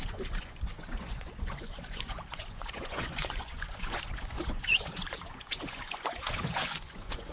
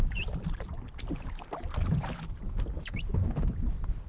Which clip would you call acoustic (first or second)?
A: second